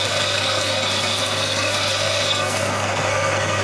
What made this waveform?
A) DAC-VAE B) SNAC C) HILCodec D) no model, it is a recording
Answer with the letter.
B